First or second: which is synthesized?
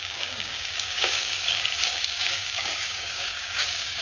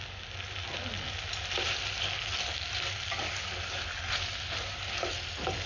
first